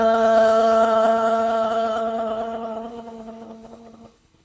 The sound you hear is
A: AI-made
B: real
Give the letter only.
A